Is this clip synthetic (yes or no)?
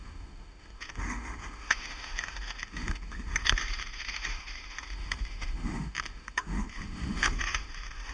yes